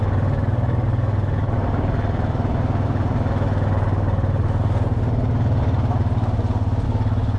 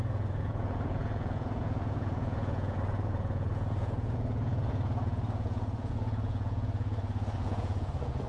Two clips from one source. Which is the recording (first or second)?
first